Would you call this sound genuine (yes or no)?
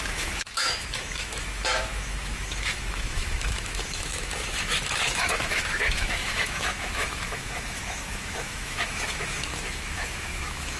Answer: no